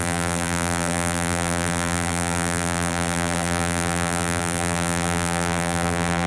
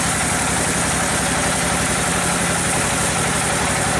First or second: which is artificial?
first